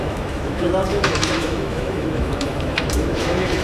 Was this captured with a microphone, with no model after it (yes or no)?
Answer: no